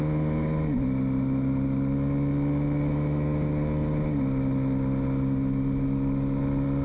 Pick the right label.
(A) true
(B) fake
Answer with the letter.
A